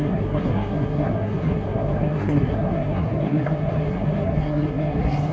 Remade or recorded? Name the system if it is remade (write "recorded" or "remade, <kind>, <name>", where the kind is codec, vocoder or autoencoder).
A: remade, codec, SNAC